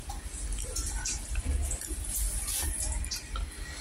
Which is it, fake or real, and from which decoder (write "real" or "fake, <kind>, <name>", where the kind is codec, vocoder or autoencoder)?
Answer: real